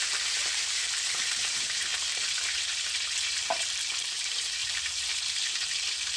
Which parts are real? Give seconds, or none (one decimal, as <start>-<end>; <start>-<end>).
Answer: 1.9-3.4